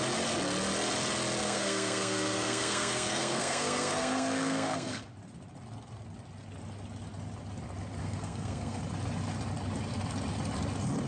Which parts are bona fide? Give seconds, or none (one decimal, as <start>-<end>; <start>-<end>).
0.0-1.4; 5.0-8.0; 8.8-11.1

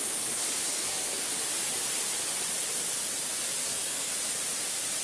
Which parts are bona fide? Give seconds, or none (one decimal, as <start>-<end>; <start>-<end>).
0.0-0.7; 1.2-3.6; 4.1-5.0